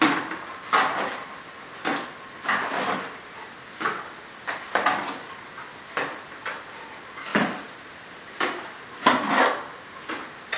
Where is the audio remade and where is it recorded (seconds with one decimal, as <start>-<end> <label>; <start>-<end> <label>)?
0.0-7.3 recorded; 7.3-8.8 remade; 8.8-10.6 recorded